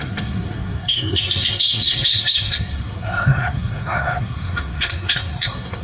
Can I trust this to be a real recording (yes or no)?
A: no